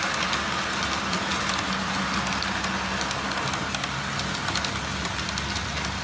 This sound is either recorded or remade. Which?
recorded